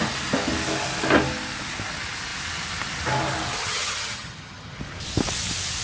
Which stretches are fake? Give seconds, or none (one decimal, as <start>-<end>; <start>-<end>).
3.6-4.8